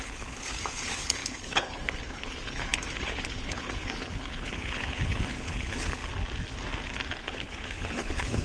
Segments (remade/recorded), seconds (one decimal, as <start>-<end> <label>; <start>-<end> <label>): 0.0-6.0 remade; 6.0-7.2 recorded; 7.2-8.4 remade